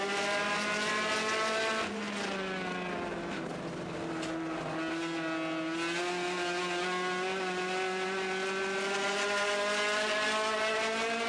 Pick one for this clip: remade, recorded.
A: recorded